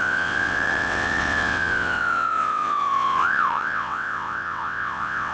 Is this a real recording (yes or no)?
no